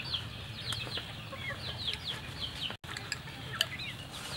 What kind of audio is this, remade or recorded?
recorded